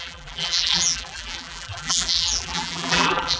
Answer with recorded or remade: remade